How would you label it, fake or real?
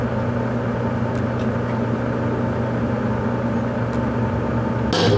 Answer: real